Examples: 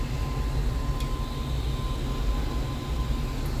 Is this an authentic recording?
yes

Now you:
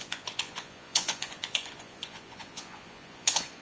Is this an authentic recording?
no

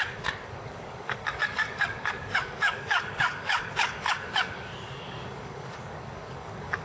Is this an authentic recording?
no